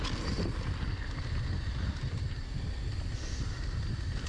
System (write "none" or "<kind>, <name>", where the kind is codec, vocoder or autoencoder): none